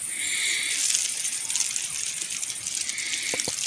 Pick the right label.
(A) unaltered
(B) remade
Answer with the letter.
A